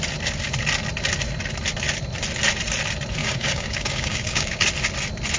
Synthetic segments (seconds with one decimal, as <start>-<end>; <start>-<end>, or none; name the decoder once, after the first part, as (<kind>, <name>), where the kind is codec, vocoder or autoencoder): 3.2-4.6 (codec, DAC)